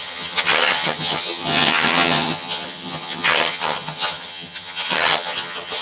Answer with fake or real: fake